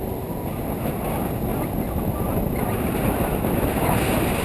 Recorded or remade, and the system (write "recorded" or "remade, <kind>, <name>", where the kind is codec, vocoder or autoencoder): recorded